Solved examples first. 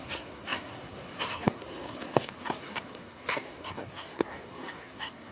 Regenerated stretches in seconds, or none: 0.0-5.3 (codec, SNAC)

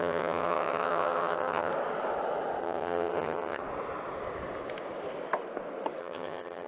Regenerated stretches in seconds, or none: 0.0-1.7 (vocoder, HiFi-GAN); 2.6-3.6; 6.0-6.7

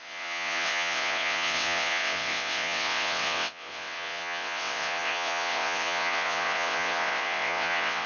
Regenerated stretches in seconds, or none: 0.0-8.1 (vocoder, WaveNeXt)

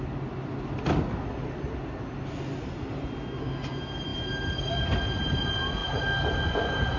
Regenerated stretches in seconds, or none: none